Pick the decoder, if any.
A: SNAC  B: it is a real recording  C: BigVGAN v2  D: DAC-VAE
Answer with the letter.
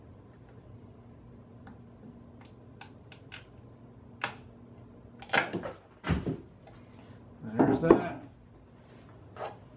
B